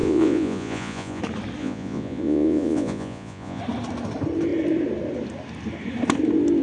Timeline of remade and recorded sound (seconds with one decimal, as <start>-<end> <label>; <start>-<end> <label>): 0.0-1.2 remade; 1.2-1.6 recorded; 1.6-3.6 remade; 3.6-6.6 recorded